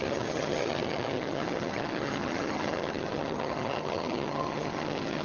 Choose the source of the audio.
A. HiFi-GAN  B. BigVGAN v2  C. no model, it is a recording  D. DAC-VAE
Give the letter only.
A